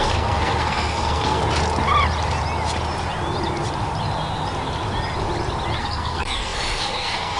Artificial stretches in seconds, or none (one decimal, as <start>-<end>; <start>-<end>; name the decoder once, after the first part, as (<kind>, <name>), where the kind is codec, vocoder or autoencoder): 0.0-1.4 (codec, SNAC); 5.8-7.4